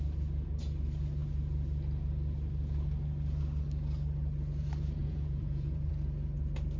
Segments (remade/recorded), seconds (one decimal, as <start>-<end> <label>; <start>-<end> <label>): 0.0-5.0 recorded; 5.0-5.9 remade; 5.9-6.8 recorded